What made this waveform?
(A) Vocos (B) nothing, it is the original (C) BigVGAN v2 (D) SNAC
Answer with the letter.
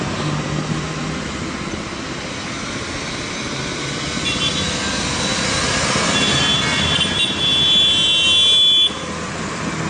B